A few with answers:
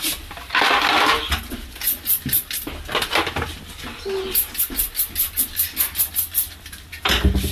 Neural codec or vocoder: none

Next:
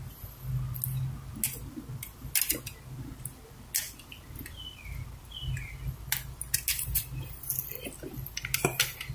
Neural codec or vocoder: none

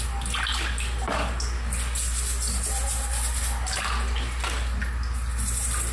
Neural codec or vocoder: none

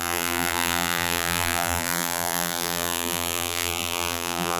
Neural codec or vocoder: vocoder, BigVGAN v2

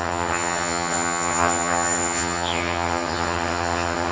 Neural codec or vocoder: vocoder, HiFi-GAN